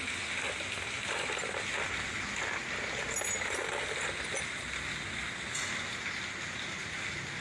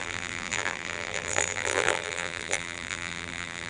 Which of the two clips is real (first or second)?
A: first